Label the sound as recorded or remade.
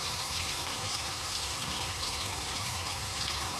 remade